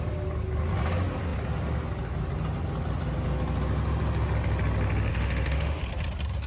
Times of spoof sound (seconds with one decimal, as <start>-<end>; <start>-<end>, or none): 5.1-5.8